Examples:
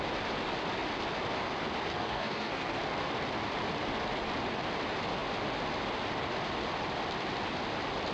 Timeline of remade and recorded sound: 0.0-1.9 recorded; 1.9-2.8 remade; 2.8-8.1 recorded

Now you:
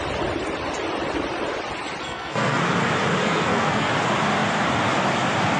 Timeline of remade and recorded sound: 0.0-2.0 recorded; 2.0-2.6 remade; 2.6-3.2 recorded; 3.2-3.9 remade; 3.9-5.6 recorded

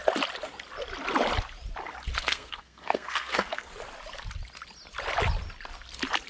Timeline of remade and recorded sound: 0.0-2.2 recorded; 2.2-3.7 remade; 3.7-6.3 recorded

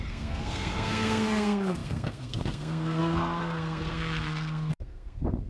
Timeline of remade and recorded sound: 0.0-5.5 remade

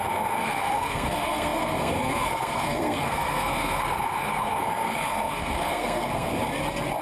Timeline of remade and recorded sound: 0.0-6.4 remade; 6.4-7.0 recorded

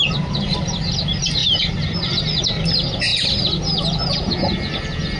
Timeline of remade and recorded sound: 0.0-5.2 recorded